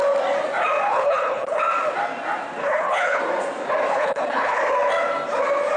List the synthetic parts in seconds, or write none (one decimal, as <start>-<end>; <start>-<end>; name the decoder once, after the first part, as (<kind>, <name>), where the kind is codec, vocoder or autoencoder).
0.9-1.6 (codec, HILCodec); 2.6-3.2; 3.9-4.6